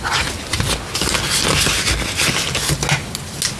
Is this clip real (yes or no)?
yes